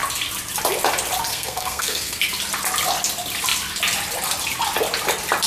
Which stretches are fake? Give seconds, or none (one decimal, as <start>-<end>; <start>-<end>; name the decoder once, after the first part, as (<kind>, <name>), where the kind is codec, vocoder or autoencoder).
1.3-2.2 (codec, SNAC)

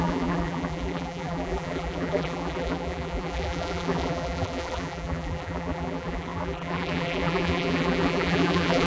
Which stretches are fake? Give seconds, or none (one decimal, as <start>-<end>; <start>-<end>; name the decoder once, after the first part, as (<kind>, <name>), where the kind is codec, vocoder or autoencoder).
0.0-8.9 (vocoder, BigVGAN v2)

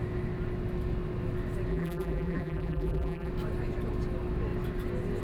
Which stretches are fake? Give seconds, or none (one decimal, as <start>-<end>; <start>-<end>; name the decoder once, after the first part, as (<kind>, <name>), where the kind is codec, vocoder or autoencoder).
1.7-3.3 (vocoder, BigVGAN v2)

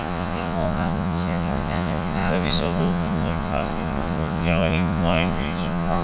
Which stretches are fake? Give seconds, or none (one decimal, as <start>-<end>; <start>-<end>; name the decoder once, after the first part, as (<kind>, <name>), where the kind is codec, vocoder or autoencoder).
0.0-6.0 (vocoder, Vocos)

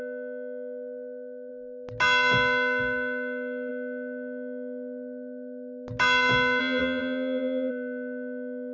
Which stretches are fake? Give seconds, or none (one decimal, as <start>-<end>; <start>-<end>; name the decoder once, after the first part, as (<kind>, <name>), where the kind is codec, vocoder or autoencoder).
6.6-7.7 (vocoder, WaveNeXt)